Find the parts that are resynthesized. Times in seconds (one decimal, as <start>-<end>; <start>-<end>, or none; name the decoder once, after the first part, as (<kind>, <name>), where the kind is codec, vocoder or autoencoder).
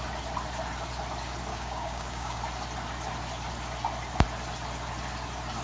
1.5-2.4 (codec, DAC)